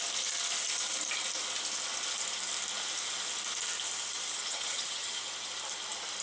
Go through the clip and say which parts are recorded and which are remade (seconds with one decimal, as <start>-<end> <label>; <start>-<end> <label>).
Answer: 0.0-4.3 recorded; 4.3-5.2 remade; 5.2-6.2 recorded